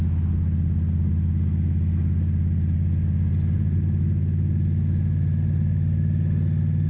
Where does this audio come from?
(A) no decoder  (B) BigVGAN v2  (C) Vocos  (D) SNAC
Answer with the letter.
A